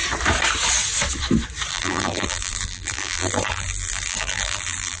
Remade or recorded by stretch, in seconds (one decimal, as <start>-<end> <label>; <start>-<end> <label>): 0.0-1.7 recorded; 1.7-5.0 remade